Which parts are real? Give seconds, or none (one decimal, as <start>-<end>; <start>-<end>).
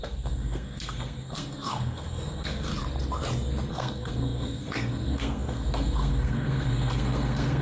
2.7-3.7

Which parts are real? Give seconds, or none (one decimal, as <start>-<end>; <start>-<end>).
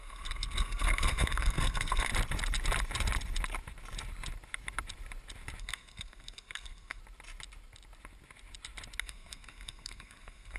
2.1-5.6; 7.0-9.0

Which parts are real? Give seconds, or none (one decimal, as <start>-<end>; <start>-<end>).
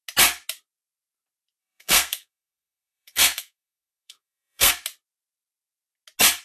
0.0-1.6; 4.7-6.4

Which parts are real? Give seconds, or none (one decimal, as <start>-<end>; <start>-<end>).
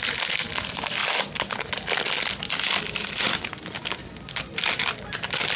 0.0-5.6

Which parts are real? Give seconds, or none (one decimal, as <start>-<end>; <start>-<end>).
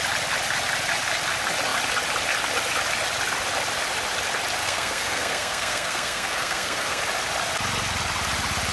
0.0-4.6; 7.0-8.7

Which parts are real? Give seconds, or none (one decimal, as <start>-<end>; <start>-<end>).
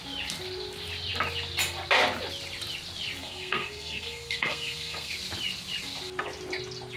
0.0-3.2; 5.1-7.0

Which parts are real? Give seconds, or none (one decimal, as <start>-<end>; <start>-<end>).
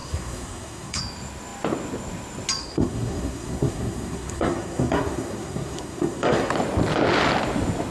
1.0-2.6; 6.5-7.9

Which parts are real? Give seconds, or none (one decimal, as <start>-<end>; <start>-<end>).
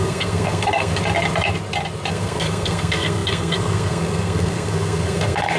0.9-2.1